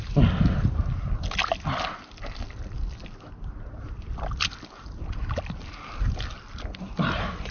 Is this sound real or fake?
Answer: real